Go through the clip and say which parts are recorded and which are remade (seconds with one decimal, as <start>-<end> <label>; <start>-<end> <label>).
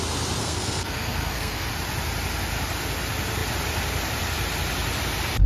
0.0-0.4 recorded; 0.4-1.7 remade; 1.7-5.5 recorded